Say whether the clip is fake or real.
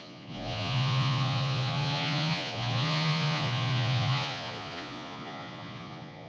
fake